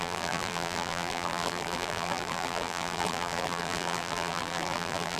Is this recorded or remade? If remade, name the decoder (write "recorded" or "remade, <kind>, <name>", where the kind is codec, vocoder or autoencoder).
remade, vocoder, BigVGAN v2